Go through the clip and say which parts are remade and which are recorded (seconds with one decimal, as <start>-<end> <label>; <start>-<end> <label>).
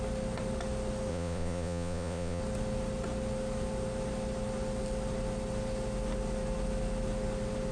0.0-1.1 recorded; 1.1-2.4 remade; 2.4-7.7 recorded